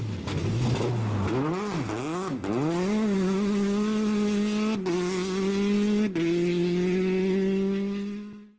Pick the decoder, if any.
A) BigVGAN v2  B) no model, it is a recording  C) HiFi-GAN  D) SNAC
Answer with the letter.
B